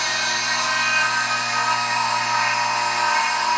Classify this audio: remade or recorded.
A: recorded